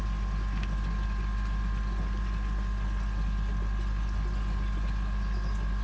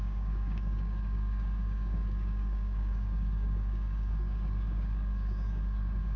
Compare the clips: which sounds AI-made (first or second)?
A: second